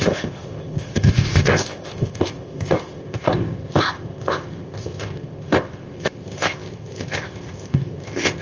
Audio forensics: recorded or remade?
remade